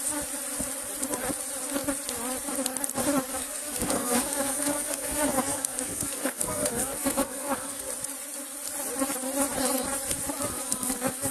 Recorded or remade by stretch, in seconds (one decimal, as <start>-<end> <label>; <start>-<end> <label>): 0.0-3.3 recorded; 3.3-7.9 remade; 7.9-10.5 recorded; 10.5-11.3 remade